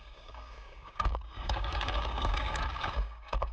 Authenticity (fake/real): fake